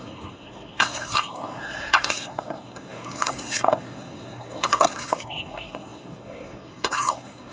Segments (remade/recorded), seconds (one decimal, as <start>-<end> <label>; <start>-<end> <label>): 0.0-7.5 remade